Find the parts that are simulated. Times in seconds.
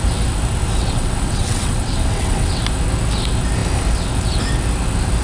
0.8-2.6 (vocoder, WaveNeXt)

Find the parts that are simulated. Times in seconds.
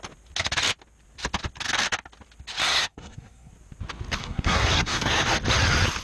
2.6-3.5 (codec, SNAC); 4.2-5.1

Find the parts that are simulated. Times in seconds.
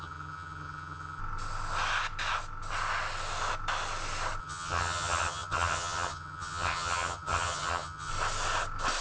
0.0-1.2 (vocoder, HiFi-GAN); 4.4-8.1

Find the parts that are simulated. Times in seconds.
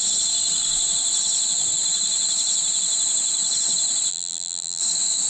4.1-4.8 (vocoder, BigVGAN v2)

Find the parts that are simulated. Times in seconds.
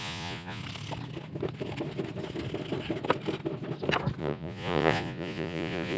0.0-0.6 (vocoder, Vocos); 4.2-6.0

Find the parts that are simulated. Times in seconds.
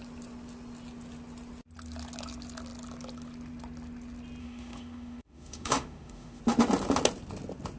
4.4-6.4 (autoencoder, DAC-VAE)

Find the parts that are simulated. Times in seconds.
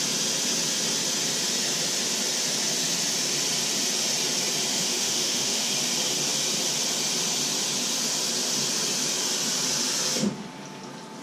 4.7-5.7 (autoencoder, DAC-VAE)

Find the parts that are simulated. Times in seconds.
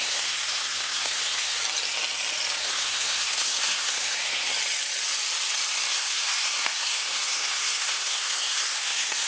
0.0-1.6 (codec, SNAC); 2.6-4.5; 5.9-9.3